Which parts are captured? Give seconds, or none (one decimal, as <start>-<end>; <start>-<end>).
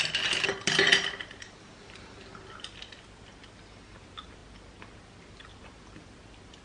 0.0-4.4